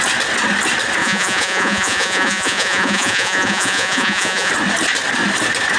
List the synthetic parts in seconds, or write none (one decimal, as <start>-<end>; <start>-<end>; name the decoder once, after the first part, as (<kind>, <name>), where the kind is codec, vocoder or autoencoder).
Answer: 1.0-4.5 (vocoder, Vocos)

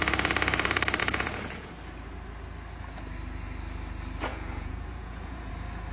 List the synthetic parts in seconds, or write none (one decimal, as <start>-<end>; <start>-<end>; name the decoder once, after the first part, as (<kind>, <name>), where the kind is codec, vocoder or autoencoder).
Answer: 1.0-1.7 (vocoder, Vocos); 4.3-5.5

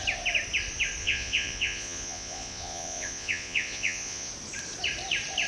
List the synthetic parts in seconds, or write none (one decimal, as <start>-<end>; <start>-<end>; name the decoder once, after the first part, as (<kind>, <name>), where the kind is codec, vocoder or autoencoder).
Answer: 1.0-4.3 (vocoder, Vocos)

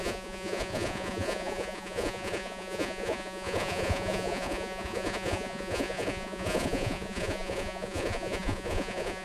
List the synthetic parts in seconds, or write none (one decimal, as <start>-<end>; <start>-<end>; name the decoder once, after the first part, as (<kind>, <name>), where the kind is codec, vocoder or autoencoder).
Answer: 0.0-9.2 (vocoder, Vocos)

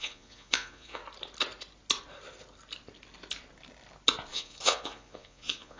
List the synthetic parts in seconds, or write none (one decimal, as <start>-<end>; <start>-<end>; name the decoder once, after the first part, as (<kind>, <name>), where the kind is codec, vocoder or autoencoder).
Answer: 0.0-1.0 (vocoder, Vocos); 4.3-5.8

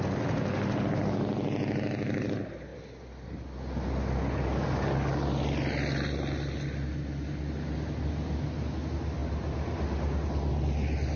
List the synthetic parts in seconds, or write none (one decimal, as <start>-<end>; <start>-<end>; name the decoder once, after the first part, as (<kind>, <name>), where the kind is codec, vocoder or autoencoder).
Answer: none